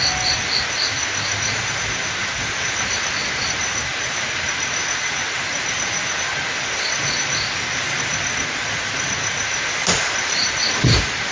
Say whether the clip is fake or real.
real